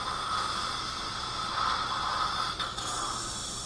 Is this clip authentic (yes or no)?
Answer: yes